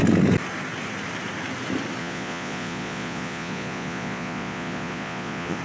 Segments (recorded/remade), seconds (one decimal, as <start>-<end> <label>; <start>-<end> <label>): 0.0-2.0 recorded; 2.0-5.6 remade